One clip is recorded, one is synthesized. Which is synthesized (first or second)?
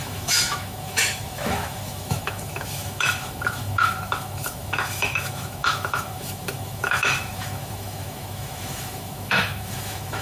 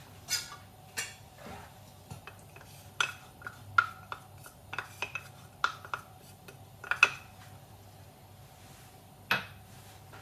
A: first